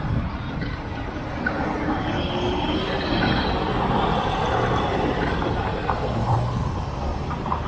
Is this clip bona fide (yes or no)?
yes